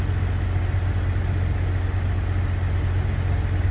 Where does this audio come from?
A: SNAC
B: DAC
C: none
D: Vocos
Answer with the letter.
C